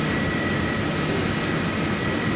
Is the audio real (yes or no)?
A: yes